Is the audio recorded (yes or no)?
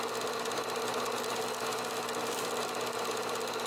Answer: yes